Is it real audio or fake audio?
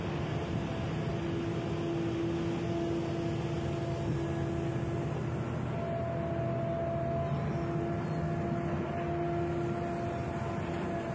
real